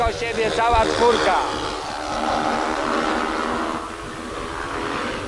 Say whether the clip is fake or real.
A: real